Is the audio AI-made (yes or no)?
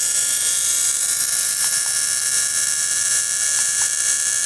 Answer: yes